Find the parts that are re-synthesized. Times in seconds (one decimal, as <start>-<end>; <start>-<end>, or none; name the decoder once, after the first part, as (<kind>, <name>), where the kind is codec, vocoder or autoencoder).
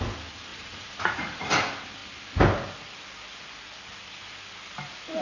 0.5-1.5 (vocoder, Vocos)